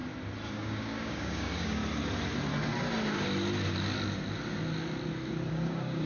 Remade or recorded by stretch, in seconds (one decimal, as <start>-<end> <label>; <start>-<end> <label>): 0.0-0.5 recorded; 0.5-1.8 remade; 1.8-5.5 recorded; 5.5-6.1 remade